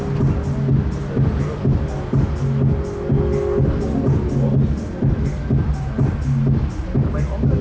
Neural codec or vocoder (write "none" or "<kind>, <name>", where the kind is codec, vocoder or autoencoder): none